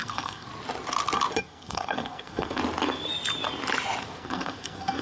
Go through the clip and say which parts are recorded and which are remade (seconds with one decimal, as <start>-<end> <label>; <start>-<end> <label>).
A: 0.0-0.5 remade; 0.5-1.4 recorded; 1.4-2.6 remade; 2.6-4.0 recorded; 4.0-5.0 remade